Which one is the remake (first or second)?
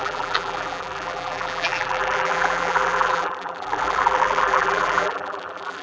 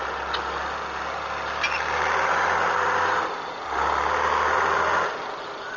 first